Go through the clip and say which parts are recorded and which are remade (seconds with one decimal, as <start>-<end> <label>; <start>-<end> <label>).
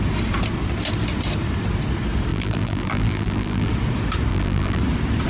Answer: 0.0-2.3 recorded; 2.3-3.7 remade; 3.7-4.3 recorded; 4.3-4.8 remade; 4.8-5.3 recorded